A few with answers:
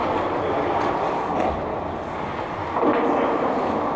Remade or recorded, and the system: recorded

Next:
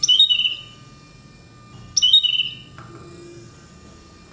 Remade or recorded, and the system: recorded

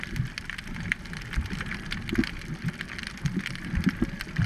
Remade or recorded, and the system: recorded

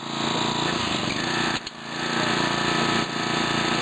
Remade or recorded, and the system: recorded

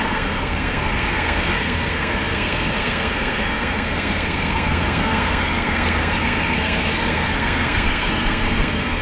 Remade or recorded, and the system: remade, codec, SNAC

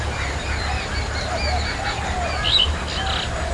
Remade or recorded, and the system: recorded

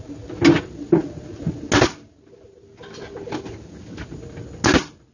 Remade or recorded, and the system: recorded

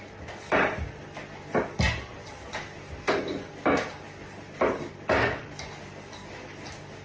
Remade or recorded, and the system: recorded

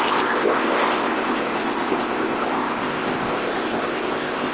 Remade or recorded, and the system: remade, codec, ZipCodec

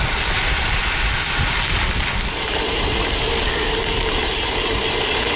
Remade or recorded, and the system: recorded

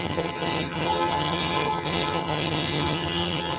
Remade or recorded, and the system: remade, vocoder, HiFi-GAN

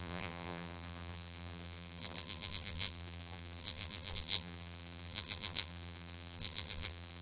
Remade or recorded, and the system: remade, vocoder, BigVGAN v2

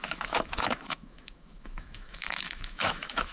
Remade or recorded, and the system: remade, autoencoder, DAC-VAE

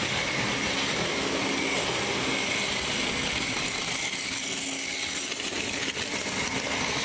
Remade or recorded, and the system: recorded